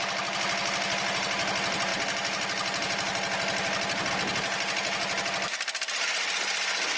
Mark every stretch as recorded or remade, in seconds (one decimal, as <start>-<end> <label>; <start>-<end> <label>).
0.0-7.0 recorded